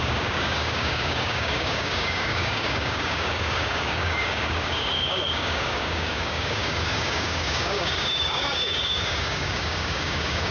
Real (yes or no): no